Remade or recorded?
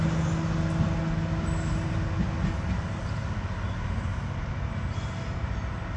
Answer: recorded